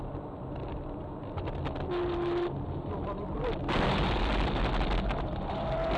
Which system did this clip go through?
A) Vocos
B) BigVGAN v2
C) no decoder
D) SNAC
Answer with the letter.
C